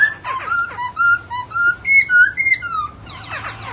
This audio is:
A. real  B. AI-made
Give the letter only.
A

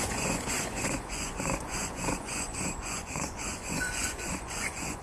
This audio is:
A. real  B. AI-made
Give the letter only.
B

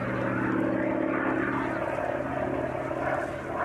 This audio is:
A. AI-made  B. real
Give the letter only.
B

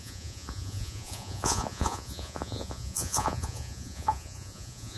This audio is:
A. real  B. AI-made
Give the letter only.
B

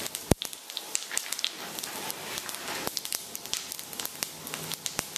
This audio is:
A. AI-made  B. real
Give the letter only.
B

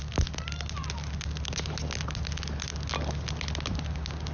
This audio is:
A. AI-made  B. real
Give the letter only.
B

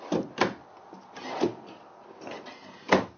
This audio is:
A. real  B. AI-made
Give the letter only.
A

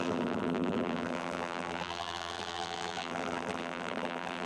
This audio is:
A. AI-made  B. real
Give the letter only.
A